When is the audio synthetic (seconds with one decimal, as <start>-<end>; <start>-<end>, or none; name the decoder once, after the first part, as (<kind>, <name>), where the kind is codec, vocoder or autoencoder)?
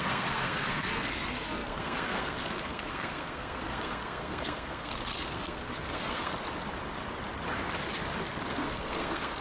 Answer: 0.0-6.3 (codec, SNAC); 8.5-9.4